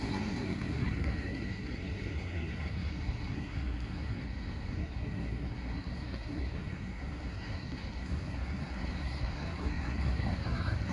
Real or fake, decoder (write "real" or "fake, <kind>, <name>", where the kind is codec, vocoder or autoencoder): fake, codec, SNAC